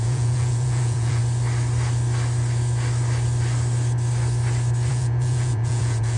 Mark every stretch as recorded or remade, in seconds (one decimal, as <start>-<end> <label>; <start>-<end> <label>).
0.0-1.2 remade; 1.2-4.9 recorded; 4.9-6.2 remade